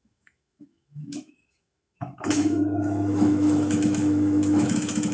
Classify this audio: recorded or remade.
remade